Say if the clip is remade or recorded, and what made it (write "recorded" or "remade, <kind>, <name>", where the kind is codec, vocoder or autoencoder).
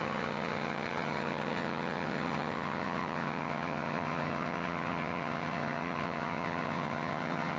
remade, vocoder, HiFi-GAN